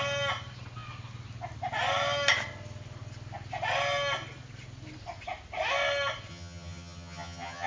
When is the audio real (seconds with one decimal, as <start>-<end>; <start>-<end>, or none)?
0.0-6.3